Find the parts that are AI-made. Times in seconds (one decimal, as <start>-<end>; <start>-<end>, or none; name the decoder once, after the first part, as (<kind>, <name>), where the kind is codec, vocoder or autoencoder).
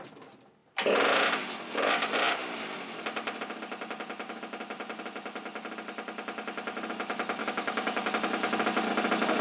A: 7.4-8.1 (codec, DAC)